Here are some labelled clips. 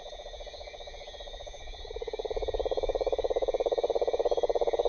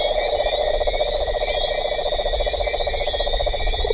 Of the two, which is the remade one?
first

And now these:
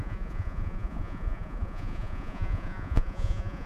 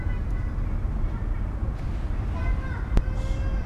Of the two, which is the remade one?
first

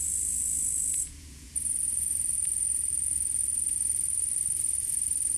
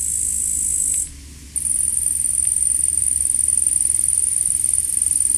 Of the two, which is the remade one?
first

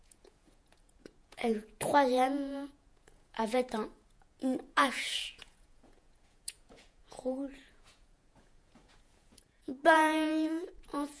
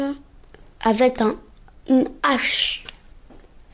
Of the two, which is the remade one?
first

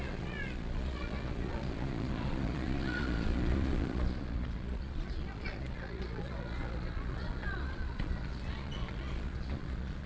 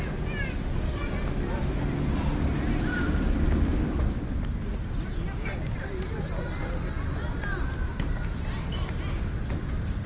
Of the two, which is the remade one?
first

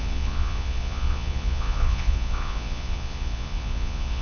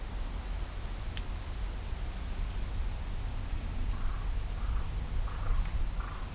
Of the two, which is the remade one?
first